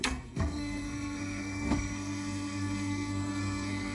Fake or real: fake